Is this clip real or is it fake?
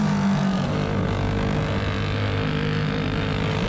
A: real